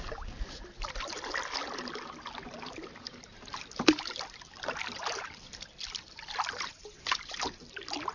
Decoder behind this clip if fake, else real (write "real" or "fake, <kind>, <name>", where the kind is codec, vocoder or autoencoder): real